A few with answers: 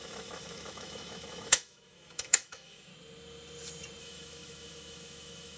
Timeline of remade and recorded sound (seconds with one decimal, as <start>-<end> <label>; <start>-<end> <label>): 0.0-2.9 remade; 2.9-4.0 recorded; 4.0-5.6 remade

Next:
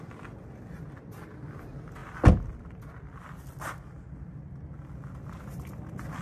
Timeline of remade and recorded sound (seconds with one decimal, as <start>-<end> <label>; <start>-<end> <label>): 0.0-6.2 recorded

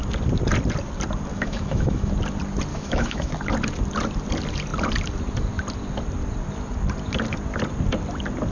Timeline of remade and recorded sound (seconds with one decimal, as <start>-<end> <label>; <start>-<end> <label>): 0.0-1.3 recorded; 1.3-2.1 remade; 2.1-2.7 recorded; 2.7-3.3 remade; 3.3-8.5 recorded

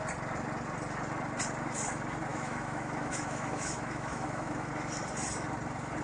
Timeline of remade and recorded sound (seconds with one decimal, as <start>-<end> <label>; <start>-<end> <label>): 0.0-2.3 recorded; 2.3-4.7 remade; 4.7-6.0 recorded

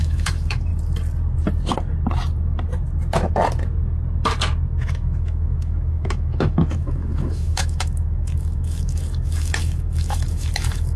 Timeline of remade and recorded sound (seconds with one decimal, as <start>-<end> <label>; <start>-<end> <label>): 0.0-0.7 remade; 0.7-4.8 recorded; 4.8-11.0 remade

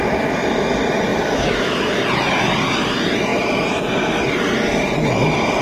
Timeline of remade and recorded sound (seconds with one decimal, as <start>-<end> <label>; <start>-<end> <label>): 0.0-1.1 recorded; 1.1-2.0 remade; 2.0-5.6 recorded

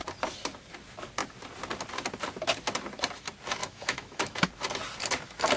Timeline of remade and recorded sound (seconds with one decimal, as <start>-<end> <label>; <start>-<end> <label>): 0.0-3.6 recorded; 3.6-4.5 remade; 4.5-5.6 recorded